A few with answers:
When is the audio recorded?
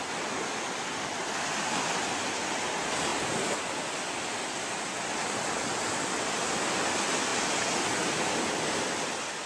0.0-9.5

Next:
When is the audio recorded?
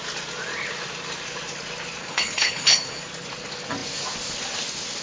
0.0-2.0; 3.0-5.0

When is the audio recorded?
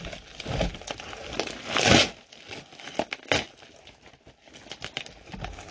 0.0-5.7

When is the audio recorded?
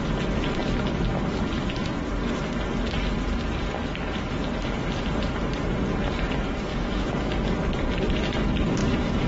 0.0-6.7; 7.3-8.8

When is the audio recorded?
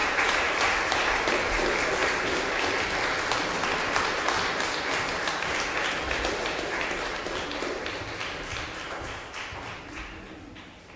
1.3-11.0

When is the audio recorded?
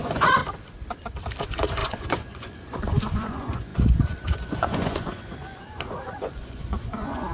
0.4-1.4